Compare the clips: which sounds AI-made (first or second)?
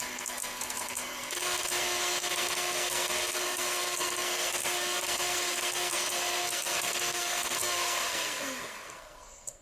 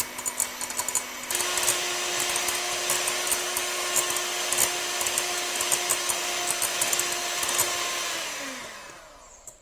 first